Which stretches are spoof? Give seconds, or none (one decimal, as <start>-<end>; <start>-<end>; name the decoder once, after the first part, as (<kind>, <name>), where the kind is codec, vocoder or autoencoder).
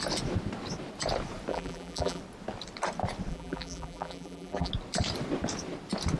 1.5-2.2 (vocoder, BigVGAN v2); 3.3-4.7